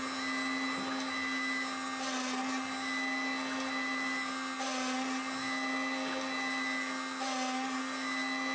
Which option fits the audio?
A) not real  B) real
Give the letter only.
B